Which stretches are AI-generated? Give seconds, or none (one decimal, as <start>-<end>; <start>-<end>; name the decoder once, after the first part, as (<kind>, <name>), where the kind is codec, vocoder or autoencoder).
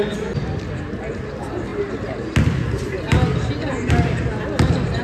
none